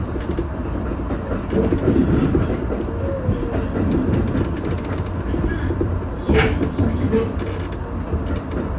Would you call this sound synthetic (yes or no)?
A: no